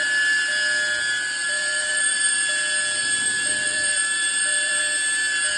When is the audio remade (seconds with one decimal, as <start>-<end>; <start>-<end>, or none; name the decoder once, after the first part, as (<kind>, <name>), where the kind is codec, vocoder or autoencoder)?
1.4-2.5 (vocoder, BigVGAN v2); 3.0-4.8